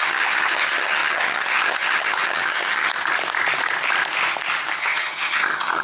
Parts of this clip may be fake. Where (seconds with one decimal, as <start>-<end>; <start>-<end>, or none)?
0.0-2.9; 4.8-5.8